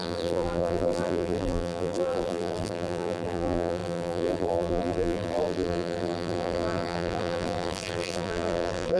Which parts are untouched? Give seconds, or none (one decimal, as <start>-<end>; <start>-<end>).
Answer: none